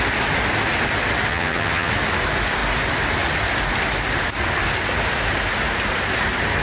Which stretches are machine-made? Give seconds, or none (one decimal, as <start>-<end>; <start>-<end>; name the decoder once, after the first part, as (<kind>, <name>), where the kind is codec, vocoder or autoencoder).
1.3-1.9 (vocoder, HiFi-GAN)